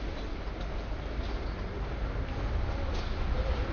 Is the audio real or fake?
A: real